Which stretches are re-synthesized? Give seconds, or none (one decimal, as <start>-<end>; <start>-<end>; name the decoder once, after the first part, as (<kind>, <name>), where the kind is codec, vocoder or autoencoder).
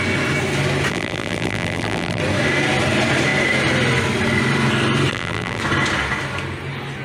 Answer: 0.9-2.2 (vocoder, BigVGAN v2); 5.1-5.6